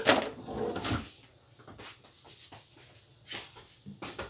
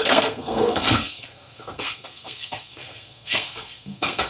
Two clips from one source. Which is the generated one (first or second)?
second